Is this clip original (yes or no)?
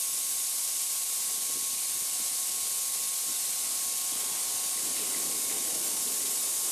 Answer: yes